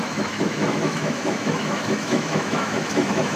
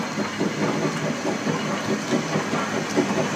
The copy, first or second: first